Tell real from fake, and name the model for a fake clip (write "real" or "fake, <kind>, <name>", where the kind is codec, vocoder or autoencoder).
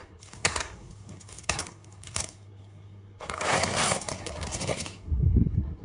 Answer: fake, codec, SNAC